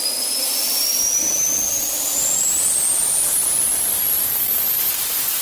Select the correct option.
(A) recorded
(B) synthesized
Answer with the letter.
B